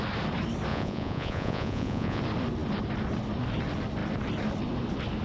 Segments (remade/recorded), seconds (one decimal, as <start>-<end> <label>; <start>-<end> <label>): 0.0-0.7 recorded; 0.7-2.2 remade; 2.2-5.2 recorded

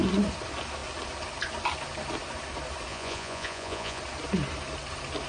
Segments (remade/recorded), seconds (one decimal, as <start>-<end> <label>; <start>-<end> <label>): 0.0-2.9 recorded; 2.9-4.0 remade; 4.0-5.3 recorded

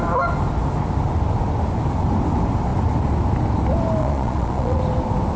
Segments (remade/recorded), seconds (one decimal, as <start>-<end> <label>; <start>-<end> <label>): 0.0-4.0 recorded; 4.0-4.8 remade; 4.8-5.4 recorded